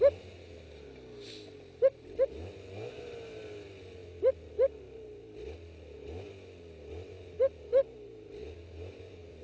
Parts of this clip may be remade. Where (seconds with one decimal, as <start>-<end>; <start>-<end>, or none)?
7.7-9.4